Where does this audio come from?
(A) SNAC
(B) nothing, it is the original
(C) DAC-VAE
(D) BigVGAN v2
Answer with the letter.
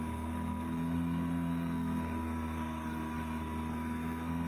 A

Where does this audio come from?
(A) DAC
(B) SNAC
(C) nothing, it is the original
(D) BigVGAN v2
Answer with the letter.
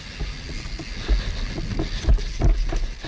C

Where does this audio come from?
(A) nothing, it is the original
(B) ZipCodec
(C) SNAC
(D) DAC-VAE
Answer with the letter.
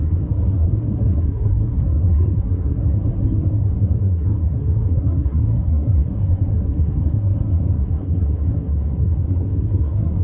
C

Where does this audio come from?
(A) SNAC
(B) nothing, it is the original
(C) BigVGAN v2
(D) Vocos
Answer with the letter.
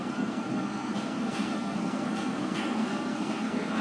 A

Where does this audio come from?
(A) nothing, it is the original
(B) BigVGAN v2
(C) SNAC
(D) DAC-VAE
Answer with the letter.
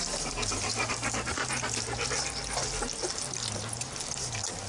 A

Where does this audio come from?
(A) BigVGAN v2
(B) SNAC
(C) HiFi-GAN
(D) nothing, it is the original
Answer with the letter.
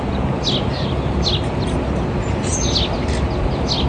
D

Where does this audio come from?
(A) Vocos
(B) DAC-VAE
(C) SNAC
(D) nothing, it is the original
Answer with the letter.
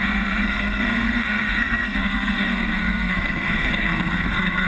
C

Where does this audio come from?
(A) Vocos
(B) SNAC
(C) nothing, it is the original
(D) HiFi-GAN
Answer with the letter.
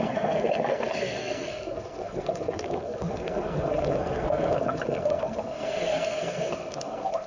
B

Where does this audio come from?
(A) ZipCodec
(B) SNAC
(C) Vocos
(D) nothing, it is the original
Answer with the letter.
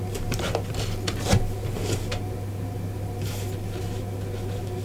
D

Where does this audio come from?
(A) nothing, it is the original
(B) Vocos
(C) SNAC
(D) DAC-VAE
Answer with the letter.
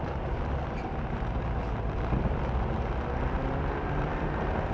A